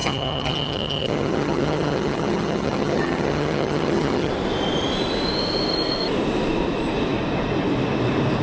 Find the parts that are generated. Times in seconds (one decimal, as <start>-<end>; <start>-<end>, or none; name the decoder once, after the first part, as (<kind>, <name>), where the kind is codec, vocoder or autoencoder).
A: 0.0-4.3 (vocoder, HiFi-GAN)